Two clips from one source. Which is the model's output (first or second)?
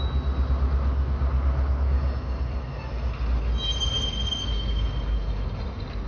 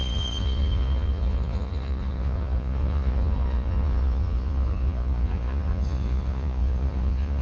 second